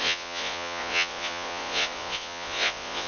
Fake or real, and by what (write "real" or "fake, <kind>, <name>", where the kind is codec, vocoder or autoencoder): fake, vocoder, Vocos